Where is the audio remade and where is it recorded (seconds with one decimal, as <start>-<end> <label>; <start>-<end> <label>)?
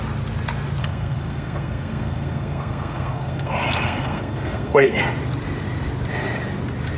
0.0-0.8 recorded; 0.8-5.0 remade; 5.0-7.0 recorded